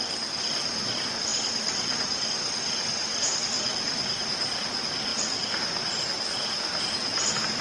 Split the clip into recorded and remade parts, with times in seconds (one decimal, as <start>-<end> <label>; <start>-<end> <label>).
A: 0.0-7.6 recorded